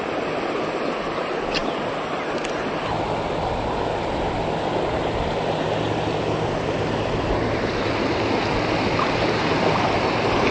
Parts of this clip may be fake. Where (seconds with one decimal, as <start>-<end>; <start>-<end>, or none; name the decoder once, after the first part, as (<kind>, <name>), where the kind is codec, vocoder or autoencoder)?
none